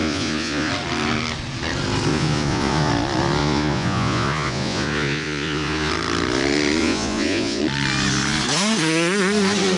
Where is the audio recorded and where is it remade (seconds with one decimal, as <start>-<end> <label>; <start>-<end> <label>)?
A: 0.0-0.7 remade; 0.7-2.1 recorded; 2.1-2.9 remade; 2.9-3.4 recorded; 3.4-5.9 remade; 5.9-6.8 recorded; 6.8-7.6 remade; 7.6-9.8 recorded